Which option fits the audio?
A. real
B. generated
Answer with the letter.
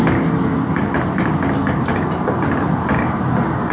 A